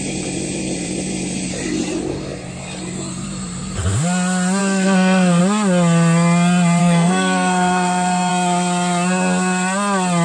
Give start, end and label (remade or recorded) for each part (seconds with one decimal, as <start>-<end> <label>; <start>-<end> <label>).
0.0-4.6 recorded; 4.6-5.4 remade; 5.4-6.8 recorded; 6.8-8.3 remade; 8.3-10.2 recorded